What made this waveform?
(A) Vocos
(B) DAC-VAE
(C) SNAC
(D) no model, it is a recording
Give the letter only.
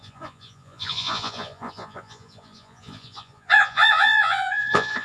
A